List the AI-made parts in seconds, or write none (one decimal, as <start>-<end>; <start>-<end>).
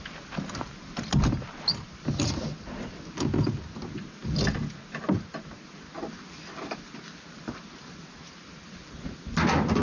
none